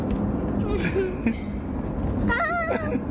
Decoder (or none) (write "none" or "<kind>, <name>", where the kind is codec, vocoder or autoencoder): none